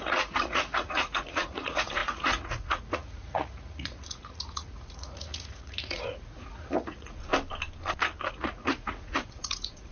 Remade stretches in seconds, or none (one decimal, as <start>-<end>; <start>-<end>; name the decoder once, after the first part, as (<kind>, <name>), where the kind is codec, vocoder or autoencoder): 0.0-7.3 (vocoder, Vocos); 8.3-9.9